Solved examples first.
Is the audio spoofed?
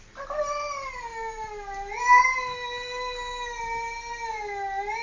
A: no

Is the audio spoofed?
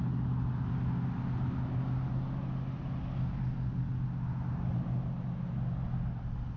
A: no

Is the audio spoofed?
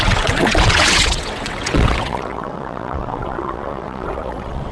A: yes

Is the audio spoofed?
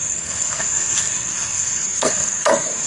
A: yes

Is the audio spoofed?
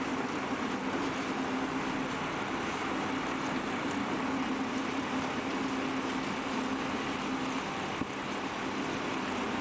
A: no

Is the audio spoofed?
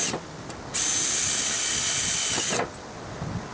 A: no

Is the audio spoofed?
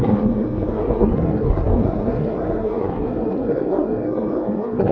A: yes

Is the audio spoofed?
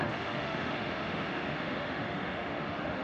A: yes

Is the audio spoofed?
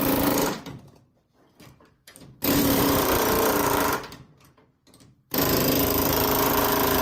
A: yes